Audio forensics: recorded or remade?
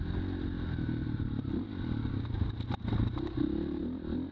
recorded